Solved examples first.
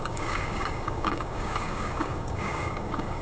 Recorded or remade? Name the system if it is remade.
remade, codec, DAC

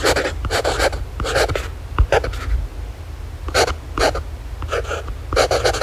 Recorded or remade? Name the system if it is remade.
remade, vocoder, BigVGAN v2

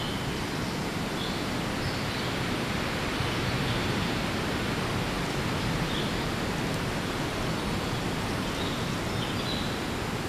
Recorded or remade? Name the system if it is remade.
recorded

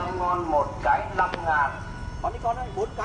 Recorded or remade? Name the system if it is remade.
recorded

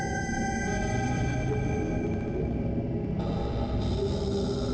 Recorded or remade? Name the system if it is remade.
recorded